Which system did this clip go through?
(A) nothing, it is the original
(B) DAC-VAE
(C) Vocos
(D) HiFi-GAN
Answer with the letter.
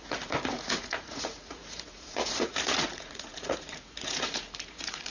C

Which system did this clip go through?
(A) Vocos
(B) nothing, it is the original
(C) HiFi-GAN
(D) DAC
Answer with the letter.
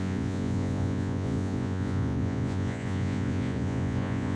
A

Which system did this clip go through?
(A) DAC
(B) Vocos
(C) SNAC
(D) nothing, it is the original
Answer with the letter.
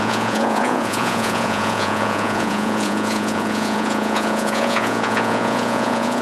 B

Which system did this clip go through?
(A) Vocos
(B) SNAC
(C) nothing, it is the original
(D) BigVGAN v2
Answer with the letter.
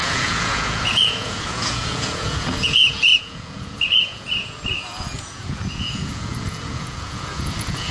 A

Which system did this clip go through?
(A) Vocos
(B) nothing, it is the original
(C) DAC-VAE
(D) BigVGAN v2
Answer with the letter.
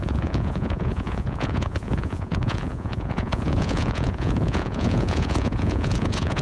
A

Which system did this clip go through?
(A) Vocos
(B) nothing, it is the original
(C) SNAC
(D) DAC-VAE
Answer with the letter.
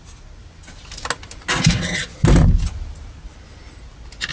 B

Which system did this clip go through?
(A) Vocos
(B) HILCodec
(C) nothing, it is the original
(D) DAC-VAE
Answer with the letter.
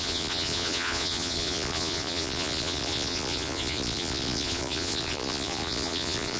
A